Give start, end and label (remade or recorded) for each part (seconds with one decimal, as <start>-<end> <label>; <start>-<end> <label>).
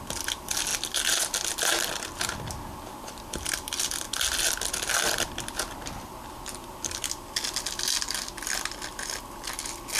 0.0-10.0 recorded